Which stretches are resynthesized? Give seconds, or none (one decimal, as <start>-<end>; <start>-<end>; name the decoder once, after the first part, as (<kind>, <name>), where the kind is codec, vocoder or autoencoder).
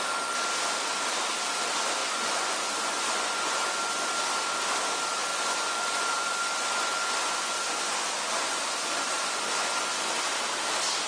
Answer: 2.0-4.1 (vocoder, Vocos); 5.3-10.1